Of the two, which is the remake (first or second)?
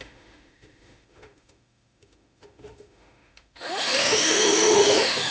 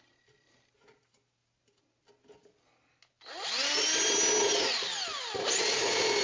first